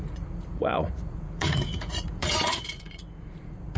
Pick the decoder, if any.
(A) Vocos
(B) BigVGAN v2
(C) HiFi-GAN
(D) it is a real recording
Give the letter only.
A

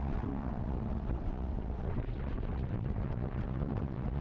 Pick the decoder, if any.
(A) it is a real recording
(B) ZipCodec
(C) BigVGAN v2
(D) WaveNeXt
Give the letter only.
D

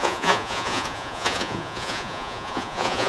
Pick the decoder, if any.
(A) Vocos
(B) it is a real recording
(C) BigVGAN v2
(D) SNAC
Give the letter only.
A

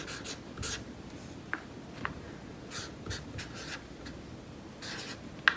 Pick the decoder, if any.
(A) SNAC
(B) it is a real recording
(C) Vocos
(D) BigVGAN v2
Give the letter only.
B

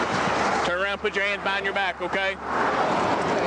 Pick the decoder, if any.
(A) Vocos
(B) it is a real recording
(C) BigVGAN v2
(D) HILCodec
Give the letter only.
B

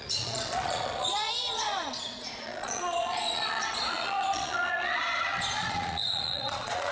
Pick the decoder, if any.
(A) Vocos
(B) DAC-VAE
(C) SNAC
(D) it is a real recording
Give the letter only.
A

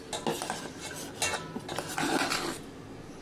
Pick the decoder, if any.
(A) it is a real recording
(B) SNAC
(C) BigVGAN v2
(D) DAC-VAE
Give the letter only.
A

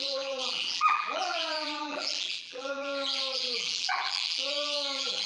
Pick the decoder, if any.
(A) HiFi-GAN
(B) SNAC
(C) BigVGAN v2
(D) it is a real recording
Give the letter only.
C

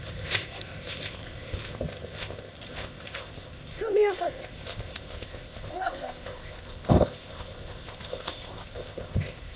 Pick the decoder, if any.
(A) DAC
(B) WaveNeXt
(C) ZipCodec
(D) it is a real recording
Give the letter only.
C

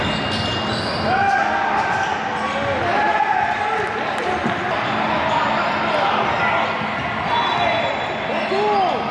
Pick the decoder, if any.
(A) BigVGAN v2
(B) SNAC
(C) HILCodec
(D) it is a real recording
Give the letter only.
D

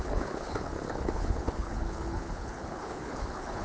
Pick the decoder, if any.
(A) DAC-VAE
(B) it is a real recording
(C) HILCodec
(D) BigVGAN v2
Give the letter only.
C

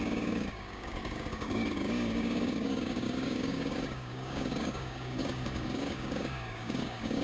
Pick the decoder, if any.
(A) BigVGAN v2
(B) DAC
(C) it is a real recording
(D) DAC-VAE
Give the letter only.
B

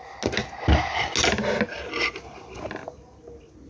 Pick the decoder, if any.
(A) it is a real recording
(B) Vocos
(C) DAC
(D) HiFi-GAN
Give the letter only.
A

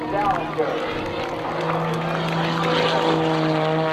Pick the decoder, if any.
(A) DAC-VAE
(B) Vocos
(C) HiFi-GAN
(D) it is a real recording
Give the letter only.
D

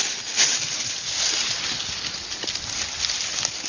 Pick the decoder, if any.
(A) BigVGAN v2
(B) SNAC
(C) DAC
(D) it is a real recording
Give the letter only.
D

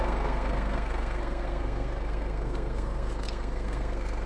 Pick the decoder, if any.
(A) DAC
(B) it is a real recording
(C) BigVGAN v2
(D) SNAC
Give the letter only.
D